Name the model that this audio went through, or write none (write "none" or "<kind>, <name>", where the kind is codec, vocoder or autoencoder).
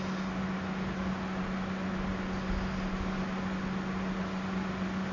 none